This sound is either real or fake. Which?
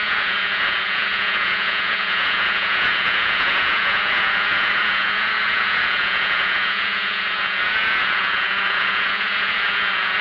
fake